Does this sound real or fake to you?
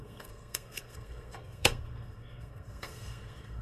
fake